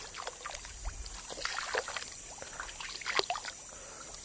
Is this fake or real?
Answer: real